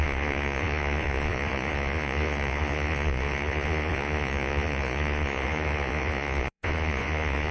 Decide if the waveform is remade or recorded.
remade